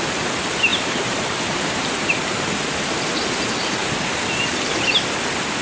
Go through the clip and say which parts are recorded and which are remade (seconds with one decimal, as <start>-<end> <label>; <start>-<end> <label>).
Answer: 0.0-0.7 recorded; 0.7-3.0 remade; 3.0-5.6 recorded